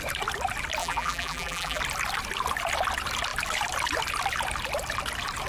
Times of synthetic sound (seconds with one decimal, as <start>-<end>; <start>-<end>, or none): 0.8-1.8